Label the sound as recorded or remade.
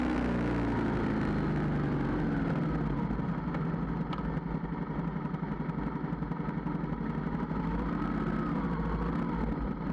recorded